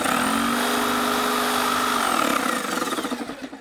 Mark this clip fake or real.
real